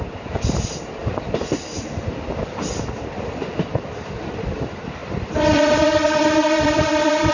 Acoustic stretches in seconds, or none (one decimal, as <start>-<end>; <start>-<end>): 0.0-5.0